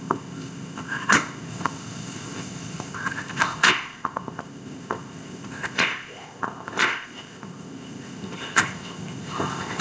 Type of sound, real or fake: fake